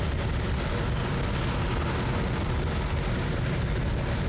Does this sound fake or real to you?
real